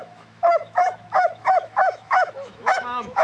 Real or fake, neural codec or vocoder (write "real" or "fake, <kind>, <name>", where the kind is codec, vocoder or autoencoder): fake, autoencoder, DAC-VAE